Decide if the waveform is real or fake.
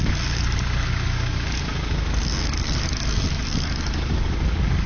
fake